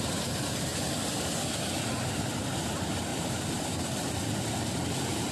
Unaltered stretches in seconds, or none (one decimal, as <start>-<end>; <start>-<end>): 0.0-3.1; 3.7-5.3